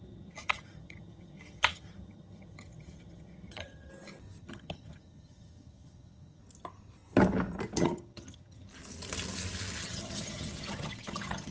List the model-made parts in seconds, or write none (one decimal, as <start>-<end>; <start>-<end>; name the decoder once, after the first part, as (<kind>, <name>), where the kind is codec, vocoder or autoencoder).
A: 0.0-3.9 (vocoder, HiFi-GAN); 4.4-6.4; 7.8-8.7; 9.8-11.5